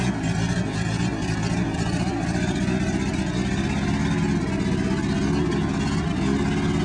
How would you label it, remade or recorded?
recorded